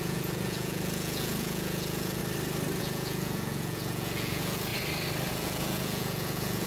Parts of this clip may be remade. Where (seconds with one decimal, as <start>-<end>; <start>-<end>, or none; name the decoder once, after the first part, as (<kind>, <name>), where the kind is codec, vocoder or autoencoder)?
0.0-2.2 (vocoder, Vocos); 2.8-4.7; 5.3-6.7